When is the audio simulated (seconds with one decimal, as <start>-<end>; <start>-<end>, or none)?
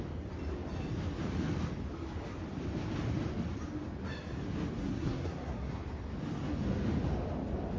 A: 4.8-5.8